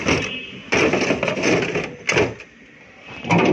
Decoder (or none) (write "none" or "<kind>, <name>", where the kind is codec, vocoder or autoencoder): none